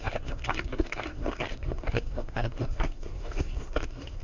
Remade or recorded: remade